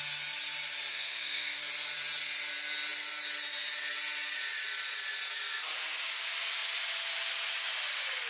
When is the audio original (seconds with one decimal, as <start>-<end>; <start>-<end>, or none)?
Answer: 0.0-0.9; 1.7-8.3